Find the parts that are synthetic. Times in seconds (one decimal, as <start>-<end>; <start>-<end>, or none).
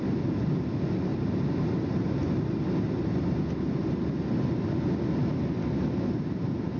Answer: 1.1-2.4